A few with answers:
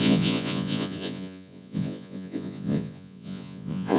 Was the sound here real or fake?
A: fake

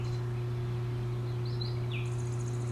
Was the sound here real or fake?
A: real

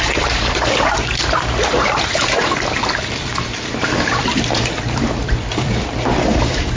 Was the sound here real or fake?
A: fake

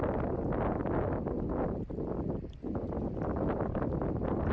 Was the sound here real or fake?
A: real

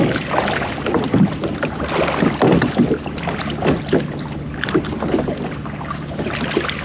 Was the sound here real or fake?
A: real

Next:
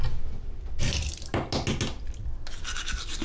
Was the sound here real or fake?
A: real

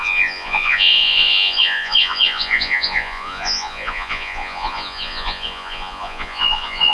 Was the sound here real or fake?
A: fake